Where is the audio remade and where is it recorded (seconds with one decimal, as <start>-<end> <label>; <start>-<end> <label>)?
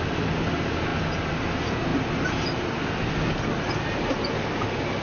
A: 0.0-5.0 recorded